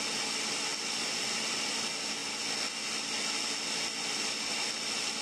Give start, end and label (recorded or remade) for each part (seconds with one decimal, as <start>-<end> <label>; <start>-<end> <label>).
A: 0.0-0.7 recorded; 0.7-1.3 remade; 1.3-5.2 recorded